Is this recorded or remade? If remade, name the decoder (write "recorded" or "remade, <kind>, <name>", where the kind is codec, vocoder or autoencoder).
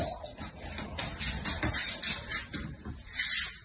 recorded